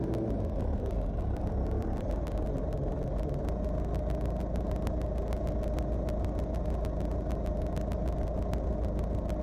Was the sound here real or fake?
real